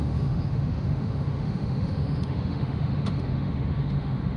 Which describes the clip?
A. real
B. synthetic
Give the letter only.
B